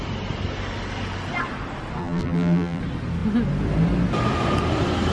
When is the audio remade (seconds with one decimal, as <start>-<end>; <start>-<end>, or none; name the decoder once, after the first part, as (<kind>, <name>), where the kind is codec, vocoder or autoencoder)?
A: 2.0-2.8 (vocoder, BigVGAN v2)